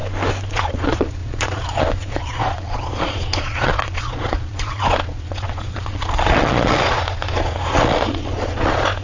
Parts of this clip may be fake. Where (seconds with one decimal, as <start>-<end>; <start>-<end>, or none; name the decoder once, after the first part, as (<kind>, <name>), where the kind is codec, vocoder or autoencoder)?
0.5-9.0 (vocoder, Vocos)